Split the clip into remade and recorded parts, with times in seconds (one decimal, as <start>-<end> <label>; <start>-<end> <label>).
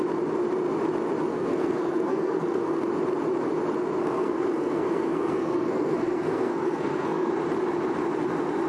0.0-1.3 recorded; 1.3-2.8 remade; 2.8-4.0 recorded; 4.0-7.3 remade; 7.3-8.7 recorded